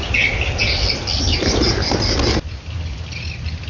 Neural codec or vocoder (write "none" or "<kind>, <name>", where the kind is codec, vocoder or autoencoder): none